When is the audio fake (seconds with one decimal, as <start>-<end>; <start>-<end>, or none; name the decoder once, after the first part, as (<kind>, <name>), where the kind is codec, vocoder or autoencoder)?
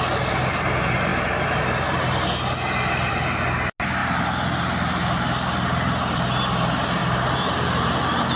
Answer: none